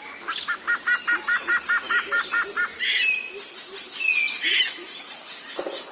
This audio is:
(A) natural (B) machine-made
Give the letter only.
A